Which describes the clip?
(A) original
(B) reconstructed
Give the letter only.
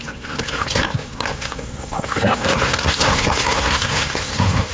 B